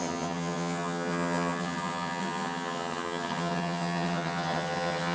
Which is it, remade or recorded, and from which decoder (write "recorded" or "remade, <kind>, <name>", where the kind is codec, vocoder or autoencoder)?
remade, vocoder, HiFi-GAN